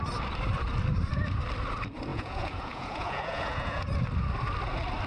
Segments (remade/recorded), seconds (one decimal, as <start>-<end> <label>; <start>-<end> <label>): 0.0-2.1 recorded; 2.1-3.8 remade; 3.8-5.1 recorded